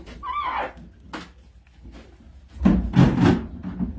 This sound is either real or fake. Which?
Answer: real